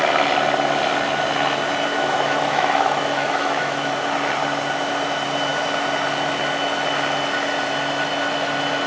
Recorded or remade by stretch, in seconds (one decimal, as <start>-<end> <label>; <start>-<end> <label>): 0.0-1.9 recorded; 1.9-3.9 remade; 3.9-8.9 recorded